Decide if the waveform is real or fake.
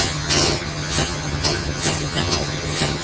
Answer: fake